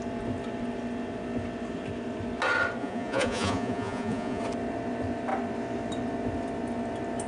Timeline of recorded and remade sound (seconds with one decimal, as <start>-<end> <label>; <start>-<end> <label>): 0.0-2.8 recorded; 2.8-4.4 remade; 4.4-7.3 recorded